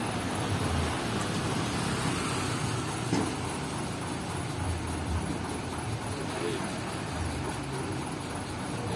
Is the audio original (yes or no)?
yes